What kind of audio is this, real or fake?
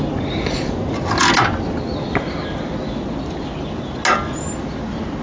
real